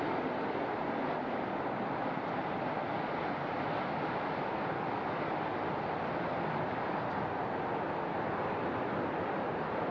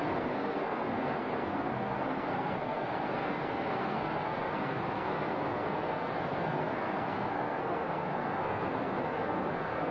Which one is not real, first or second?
second